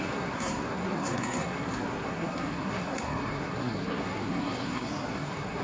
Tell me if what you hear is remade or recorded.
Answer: remade